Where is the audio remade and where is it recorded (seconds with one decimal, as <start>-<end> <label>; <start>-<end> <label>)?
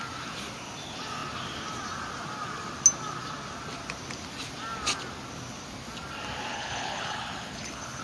0.0-6.5 recorded; 6.5-8.0 remade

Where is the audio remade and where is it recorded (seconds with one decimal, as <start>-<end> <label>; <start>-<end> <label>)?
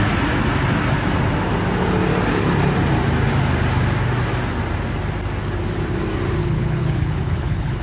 0.0-6.4 recorded; 6.4-7.8 remade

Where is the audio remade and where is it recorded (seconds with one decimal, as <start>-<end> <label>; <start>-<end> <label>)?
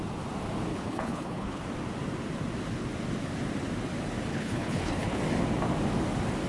0.0-0.7 recorded; 0.7-1.6 remade; 1.6-4.3 recorded; 4.3-5.2 remade; 5.2-6.5 recorded